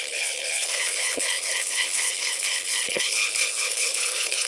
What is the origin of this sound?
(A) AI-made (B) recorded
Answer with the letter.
A